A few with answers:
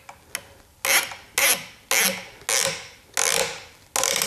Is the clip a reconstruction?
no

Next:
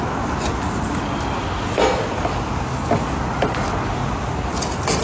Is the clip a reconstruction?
no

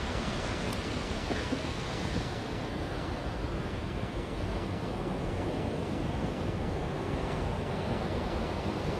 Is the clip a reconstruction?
yes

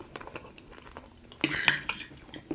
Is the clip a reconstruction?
no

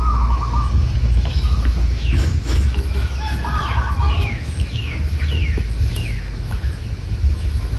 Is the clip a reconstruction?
yes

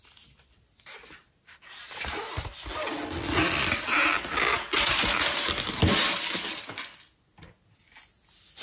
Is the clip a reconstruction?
no